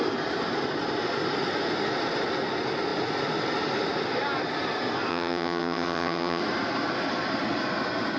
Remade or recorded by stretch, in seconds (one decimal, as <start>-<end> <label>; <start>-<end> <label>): 0.0-5.1 recorded; 5.1-6.4 remade; 6.4-8.2 recorded